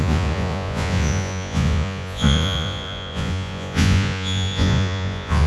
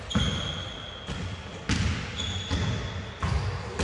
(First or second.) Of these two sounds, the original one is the second